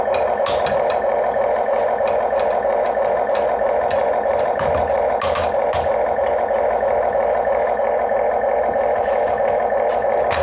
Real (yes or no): yes